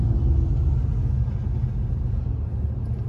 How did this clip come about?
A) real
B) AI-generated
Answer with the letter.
A